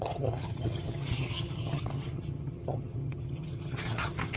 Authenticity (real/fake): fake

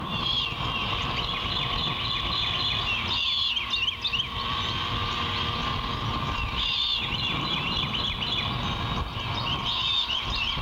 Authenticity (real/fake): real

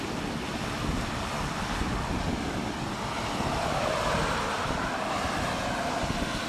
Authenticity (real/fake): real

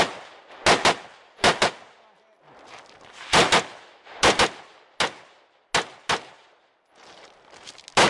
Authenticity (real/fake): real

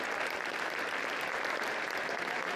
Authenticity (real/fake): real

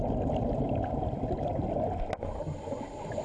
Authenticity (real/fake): real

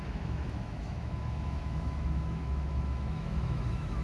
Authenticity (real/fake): fake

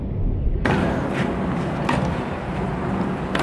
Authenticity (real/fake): real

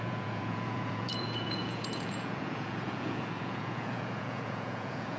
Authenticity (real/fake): fake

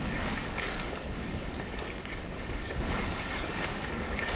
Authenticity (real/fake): fake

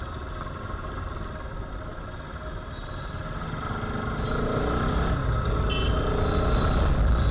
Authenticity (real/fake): real